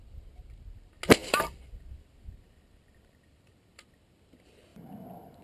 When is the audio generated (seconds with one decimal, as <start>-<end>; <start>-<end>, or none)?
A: 1.2-4.3; 4.7-5.4

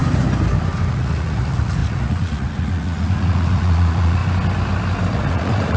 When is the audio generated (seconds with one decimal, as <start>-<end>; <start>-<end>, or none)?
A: 0.9-4.2; 5.1-5.8

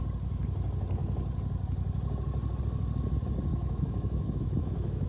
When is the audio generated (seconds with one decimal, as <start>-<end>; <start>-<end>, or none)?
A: 3.5-5.1